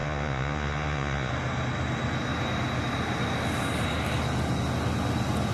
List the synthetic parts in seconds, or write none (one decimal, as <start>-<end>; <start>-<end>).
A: 0.0-1.3